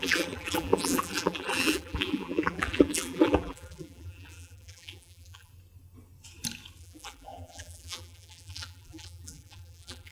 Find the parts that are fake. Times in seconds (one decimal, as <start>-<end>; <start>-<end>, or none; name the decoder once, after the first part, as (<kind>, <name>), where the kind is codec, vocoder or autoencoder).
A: 0.0-5.5 (vocoder, BigVGAN v2); 6.8-10.1